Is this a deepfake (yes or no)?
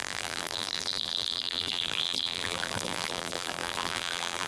yes